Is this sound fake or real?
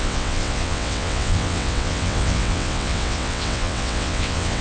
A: fake